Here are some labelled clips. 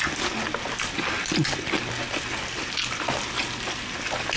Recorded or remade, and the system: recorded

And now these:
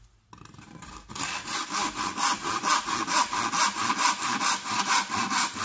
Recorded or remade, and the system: recorded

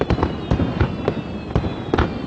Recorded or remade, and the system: recorded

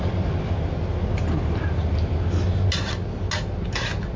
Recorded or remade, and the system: recorded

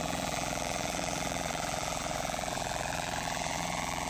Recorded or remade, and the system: remade, vocoder, BigVGAN v2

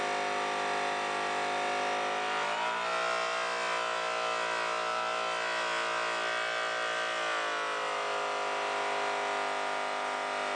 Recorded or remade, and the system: recorded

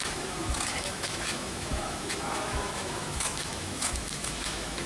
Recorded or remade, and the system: remade, autoencoder, DAC-VAE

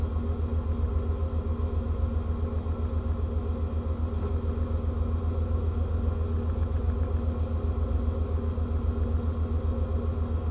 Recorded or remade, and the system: recorded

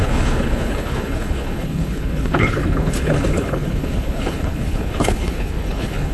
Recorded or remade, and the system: remade, codec, HILCodec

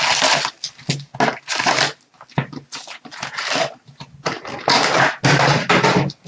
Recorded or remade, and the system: recorded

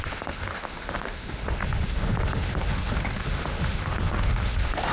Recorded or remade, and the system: remade, autoencoder, DAC-VAE